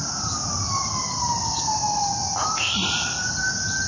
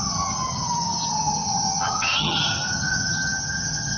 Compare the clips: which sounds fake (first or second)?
second